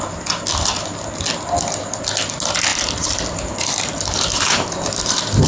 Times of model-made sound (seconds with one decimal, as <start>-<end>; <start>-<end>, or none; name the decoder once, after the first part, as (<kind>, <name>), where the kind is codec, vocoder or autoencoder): 2.7-5.5 (vocoder, BigVGAN v2)